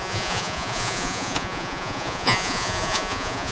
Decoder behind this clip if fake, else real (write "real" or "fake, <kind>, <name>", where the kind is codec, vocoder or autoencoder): fake, vocoder, Vocos